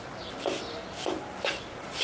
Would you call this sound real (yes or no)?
yes